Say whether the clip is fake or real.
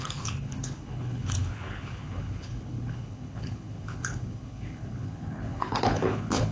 fake